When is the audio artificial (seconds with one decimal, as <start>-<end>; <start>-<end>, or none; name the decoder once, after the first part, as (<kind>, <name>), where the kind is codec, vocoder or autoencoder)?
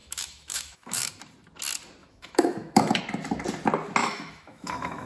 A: 0.0-1.1 (autoencoder, DAC-VAE); 2.0-3.0; 4.0-5.1